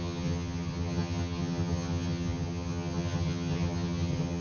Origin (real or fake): fake